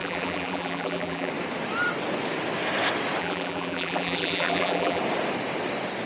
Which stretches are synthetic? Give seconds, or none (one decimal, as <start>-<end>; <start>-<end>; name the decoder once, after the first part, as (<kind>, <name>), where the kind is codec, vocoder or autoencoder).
0.0-1.3 (vocoder, BigVGAN v2); 3.2-5.0